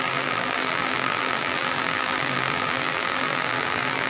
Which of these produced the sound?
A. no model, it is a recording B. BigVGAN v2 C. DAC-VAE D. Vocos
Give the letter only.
B